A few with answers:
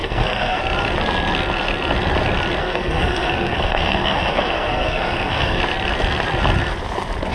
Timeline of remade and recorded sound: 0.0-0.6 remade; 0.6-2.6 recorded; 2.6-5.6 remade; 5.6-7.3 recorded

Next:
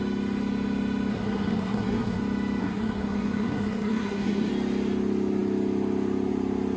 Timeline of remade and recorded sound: 0.0-1.1 recorded; 1.1-2.2 remade; 2.2-2.6 recorded; 2.6-4.5 remade; 4.5-6.8 recorded

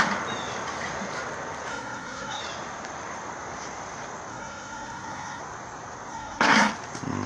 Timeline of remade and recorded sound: 0.0-1.7 recorded; 1.7-2.4 remade; 2.4-4.3 recorded; 4.3-5.4 remade; 5.4-6.1 recorded; 6.1-6.7 remade; 6.7-7.3 recorded

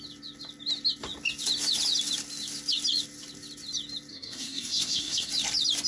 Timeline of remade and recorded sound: 0.0-4.1 recorded; 4.1-5.3 remade; 5.3-5.9 recorded

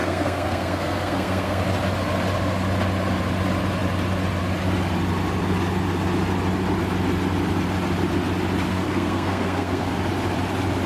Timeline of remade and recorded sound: 0.0-1.6 remade; 1.6-8.7 recorded; 8.7-9.9 remade; 9.9-10.9 recorded

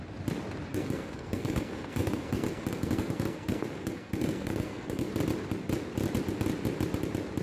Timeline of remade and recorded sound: 0.0-0.7 recorded; 0.7-5.1 remade; 5.1-7.4 recorded